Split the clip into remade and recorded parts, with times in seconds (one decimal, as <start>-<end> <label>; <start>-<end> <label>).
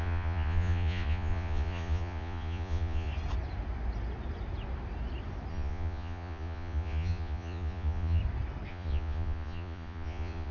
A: 0.0-3.1 remade; 3.1-5.5 recorded; 5.5-8.2 remade; 8.2-8.7 recorded; 8.7-10.5 remade